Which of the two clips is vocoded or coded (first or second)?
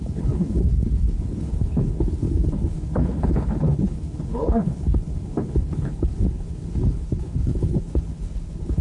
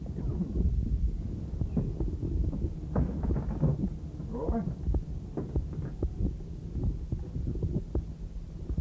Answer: first